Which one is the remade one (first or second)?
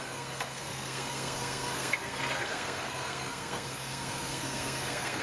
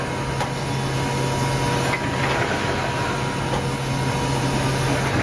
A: first